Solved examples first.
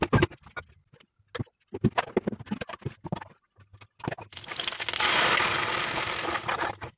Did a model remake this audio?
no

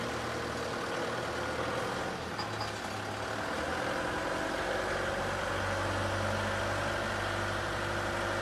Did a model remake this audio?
no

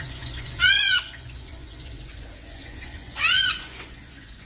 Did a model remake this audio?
yes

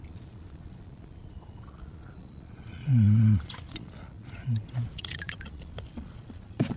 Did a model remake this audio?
yes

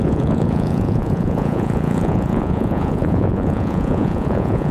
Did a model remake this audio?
yes